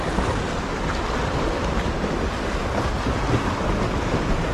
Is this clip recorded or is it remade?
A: recorded